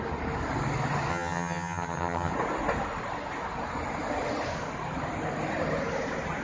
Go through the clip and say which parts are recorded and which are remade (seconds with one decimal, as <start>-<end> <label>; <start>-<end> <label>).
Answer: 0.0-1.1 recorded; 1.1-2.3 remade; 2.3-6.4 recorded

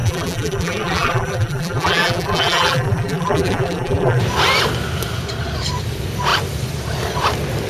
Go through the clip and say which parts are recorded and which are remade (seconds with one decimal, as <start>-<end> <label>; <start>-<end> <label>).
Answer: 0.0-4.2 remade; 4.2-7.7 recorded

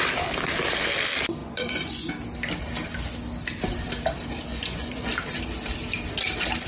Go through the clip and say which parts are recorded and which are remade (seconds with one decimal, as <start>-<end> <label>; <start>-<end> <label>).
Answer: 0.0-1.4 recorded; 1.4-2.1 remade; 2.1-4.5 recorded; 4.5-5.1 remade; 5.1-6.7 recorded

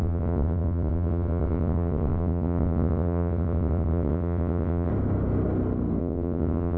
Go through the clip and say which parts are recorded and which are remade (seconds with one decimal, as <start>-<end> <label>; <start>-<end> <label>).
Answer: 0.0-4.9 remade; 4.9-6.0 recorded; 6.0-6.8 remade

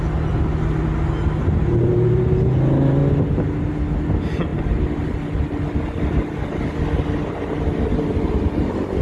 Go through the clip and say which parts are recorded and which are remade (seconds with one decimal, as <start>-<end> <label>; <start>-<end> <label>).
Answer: 0.0-1.6 recorded; 1.6-2.2 remade; 2.2-9.0 recorded